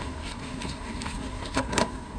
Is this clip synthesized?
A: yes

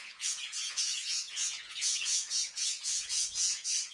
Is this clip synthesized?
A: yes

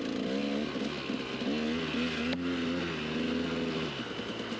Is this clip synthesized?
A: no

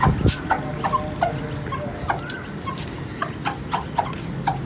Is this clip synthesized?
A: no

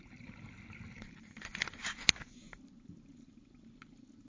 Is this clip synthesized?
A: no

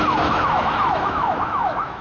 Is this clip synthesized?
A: yes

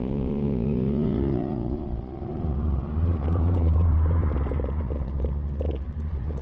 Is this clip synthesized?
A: yes